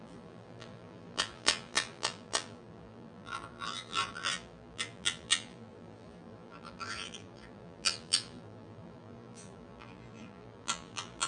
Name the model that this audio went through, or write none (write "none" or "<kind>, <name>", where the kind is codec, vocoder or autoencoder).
vocoder, BigVGAN v2